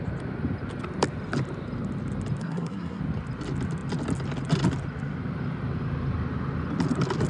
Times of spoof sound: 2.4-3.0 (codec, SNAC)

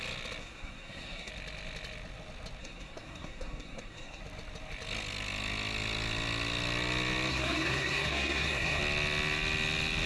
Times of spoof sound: 0.4-1.3 (codec, SNAC); 2.6-4.2; 7.3-8.8

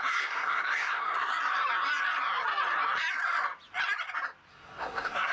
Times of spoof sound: 0.0-1.3 (codec, SNAC); 4.5-5.3

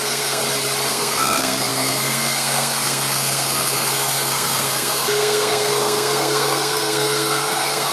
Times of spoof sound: 0.0-0.4 (codec, SNAC); 0.9-7.9